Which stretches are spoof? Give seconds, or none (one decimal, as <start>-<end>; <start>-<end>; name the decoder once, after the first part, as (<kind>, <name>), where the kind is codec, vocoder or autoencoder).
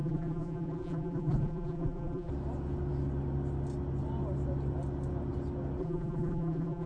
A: 0.0-2.3 (vocoder, BigVGAN v2); 5.8-6.9